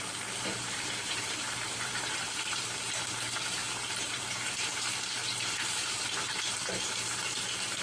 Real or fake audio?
fake